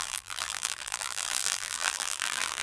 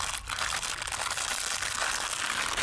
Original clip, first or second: second